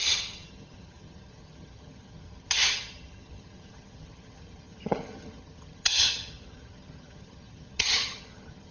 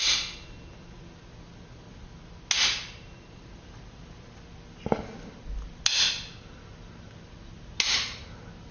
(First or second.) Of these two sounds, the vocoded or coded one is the first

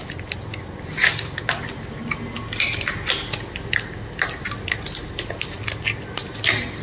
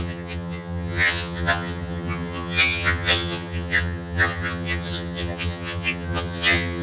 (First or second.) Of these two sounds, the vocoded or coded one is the second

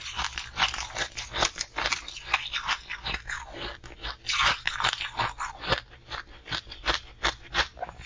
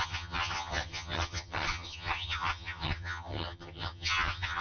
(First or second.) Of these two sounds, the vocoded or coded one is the second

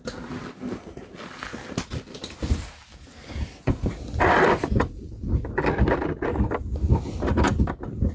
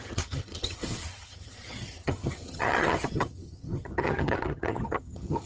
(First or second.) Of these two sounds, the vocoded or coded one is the second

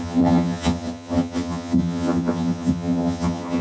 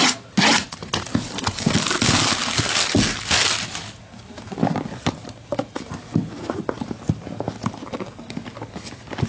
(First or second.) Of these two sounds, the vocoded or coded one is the first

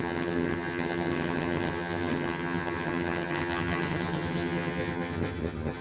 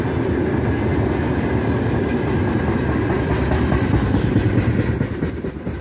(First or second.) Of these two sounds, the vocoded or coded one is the first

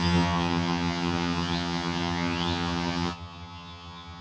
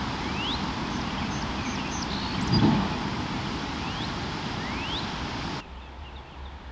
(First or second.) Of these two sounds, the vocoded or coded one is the first